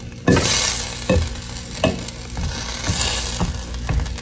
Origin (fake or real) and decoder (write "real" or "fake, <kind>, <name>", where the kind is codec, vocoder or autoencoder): real